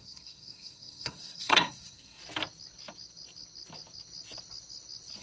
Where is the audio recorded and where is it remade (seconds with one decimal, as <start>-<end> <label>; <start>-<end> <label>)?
0.0-2.2 remade; 2.2-5.2 recorded